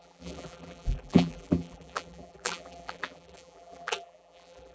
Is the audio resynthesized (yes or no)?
yes